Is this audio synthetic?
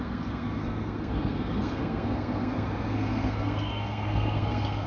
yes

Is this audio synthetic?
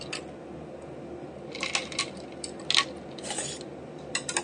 no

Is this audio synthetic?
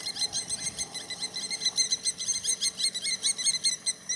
no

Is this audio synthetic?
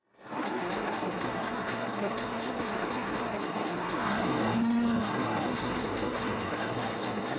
yes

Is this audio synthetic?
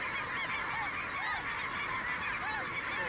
no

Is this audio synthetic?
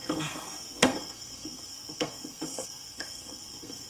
yes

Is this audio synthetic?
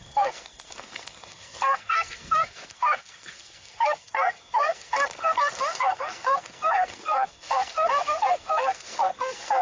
yes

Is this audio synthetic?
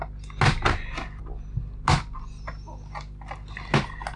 no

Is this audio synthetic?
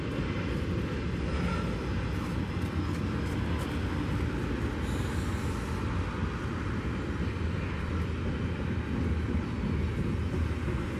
no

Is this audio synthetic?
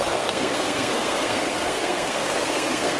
yes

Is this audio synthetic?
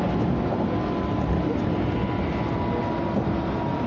no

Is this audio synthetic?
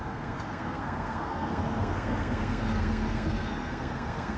yes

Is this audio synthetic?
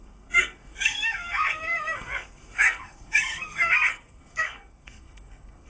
yes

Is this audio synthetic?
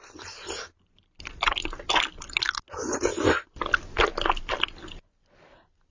no